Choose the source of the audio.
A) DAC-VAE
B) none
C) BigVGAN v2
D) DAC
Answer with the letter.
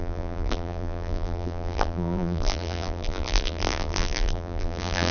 C